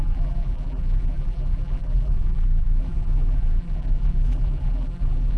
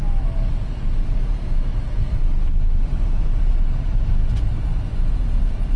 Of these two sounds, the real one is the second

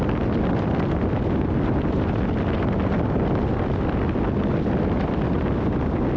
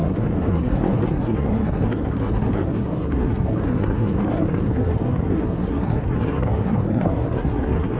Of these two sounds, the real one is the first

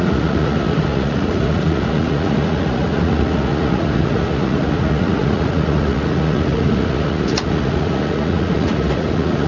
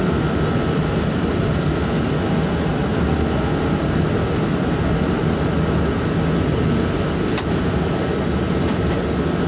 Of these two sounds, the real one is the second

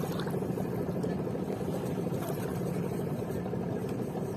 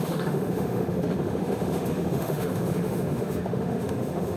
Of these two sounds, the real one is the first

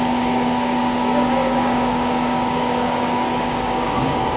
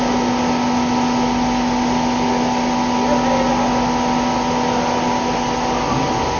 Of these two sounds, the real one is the second